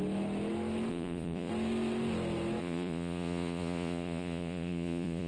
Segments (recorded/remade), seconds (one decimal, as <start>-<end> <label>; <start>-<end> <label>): 0.0-0.9 recorded; 0.9-1.5 remade; 1.5-2.6 recorded; 2.6-5.3 remade